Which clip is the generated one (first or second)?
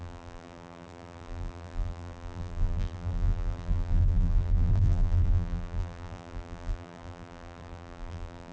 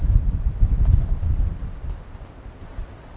first